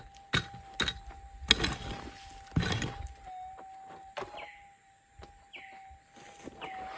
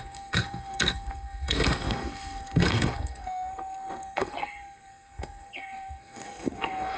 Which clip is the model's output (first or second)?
second